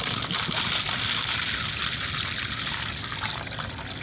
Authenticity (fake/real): real